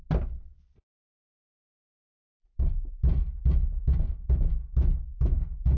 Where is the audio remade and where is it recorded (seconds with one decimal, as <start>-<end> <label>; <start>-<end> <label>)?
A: 0.0-5.8 recorded